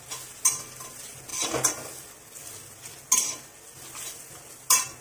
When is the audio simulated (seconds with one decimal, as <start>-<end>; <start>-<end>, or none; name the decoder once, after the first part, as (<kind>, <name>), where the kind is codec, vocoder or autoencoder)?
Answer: none